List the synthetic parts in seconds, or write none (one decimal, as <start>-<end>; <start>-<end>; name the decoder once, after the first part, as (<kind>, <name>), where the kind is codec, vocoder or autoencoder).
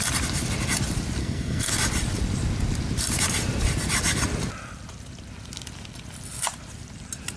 1.2-1.7 (codec, SNAC)